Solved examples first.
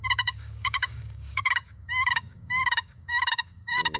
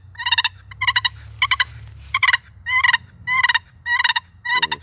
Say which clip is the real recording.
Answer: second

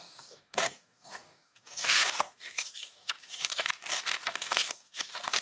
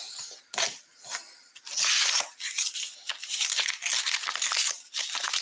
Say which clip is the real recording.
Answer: second